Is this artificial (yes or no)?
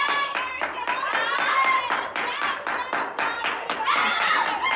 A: no